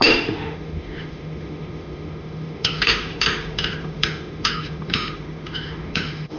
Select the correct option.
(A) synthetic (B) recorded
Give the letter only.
A